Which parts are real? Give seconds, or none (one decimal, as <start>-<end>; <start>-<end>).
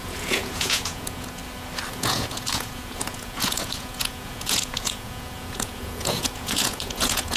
1.4-1.9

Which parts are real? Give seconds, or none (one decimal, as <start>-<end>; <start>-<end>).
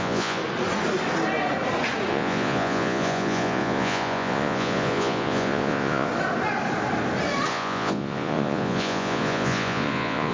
0.4-2.1; 6.1-7.5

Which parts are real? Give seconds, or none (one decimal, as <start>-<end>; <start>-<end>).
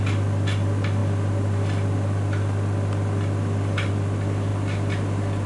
0.0-5.5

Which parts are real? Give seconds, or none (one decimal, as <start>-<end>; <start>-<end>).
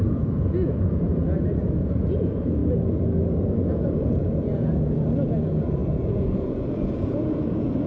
2.6-3.6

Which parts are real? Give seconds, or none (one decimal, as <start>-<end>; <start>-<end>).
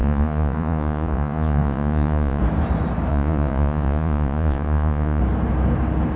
2.4-3.1; 5.2-6.2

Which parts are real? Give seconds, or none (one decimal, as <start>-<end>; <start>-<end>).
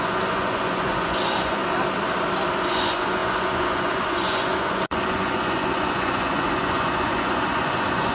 1.6-2.6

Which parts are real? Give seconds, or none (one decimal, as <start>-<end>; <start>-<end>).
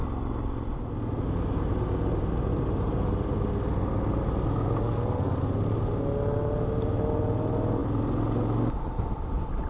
0.0-9.7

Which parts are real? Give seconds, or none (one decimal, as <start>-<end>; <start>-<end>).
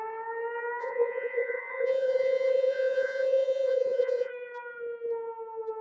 0.0-0.8; 4.3-5.8